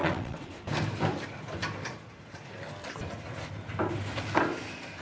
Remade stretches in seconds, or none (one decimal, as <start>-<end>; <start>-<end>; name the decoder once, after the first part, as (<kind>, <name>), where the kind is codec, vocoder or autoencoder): 0.0-0.5 (vocoder, WaveNeXt)